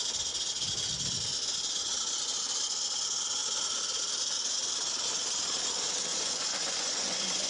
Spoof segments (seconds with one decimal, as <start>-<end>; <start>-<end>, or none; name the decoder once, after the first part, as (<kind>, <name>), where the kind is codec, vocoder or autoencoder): 6.1-7.5 (vocoder, Vocos)